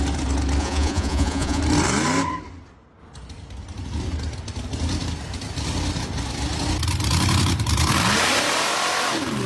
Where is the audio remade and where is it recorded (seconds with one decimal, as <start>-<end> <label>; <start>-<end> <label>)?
0.0-0.6 recorded; 0.6-1.6 remade; 1.6-9.5 recorded